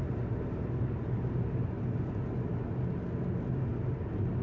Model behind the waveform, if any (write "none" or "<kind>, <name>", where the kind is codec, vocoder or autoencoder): none